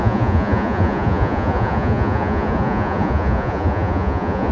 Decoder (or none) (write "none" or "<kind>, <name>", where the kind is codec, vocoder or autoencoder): vocoder, Vocos